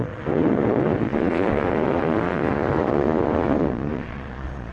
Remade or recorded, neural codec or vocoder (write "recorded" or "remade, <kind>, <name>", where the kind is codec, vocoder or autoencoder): remade, vocoder, Vocos